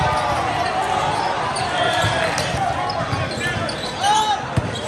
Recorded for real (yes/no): yes